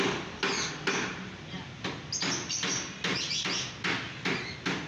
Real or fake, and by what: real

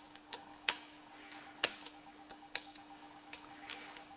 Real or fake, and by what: fake, codec, DAC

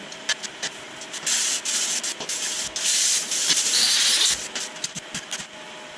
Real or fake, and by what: real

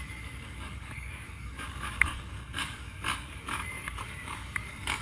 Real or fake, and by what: fake, codec, DAC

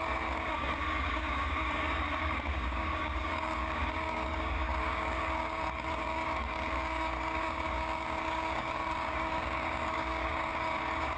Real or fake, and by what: fake, codec, DAC